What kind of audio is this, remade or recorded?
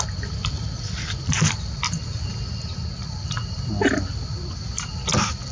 recorded